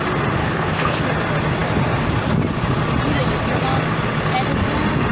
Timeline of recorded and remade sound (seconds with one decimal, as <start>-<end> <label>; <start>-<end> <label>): 0.0-0.4 recorded; 0.4-1.0 remade; 1.0-5.1 recorded